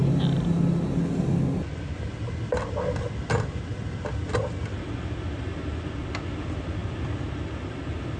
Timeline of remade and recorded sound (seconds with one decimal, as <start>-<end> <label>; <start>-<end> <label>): 0.0-8.2 recorded